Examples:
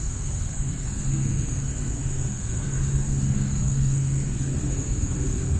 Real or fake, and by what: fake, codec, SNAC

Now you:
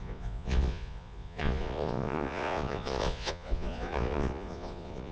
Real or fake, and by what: fake, vocoder, Vocos